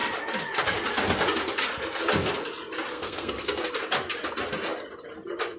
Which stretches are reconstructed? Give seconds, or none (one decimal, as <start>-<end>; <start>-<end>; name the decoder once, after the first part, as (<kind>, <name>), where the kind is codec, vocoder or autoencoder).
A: 2.9-3.7 (codec, SNAC)